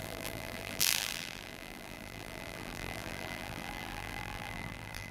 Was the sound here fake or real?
fake